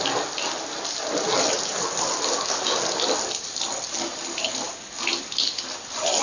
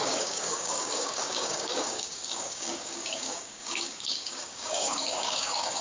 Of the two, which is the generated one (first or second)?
second